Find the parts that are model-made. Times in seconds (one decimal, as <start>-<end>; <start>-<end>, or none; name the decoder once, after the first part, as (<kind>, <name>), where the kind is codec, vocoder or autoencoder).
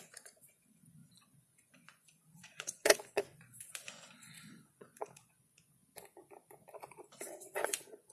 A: 0.0-5.8 (vocoder, Vocos); 7.4-8.1